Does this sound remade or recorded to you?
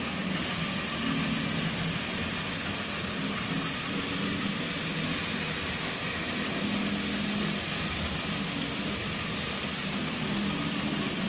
recorded